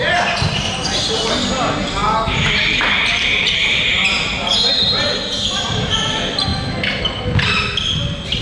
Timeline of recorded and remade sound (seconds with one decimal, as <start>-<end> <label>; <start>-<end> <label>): 0.0-8.4 recorded